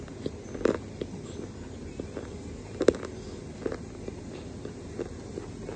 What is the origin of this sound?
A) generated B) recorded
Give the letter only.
B